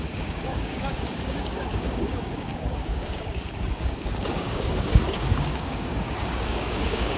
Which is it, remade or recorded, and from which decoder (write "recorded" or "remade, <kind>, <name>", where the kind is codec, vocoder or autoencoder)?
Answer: remade, codec, DAC